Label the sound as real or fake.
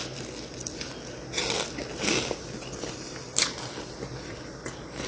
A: real